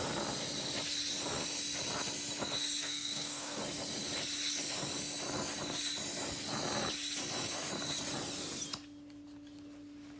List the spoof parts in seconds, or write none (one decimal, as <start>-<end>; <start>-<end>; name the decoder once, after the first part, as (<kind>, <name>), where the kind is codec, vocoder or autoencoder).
2.8-3.6 (codec, SNAC)